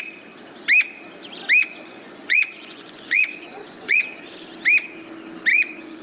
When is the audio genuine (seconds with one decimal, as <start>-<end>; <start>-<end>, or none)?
0.0-1.6; 4.0-5.5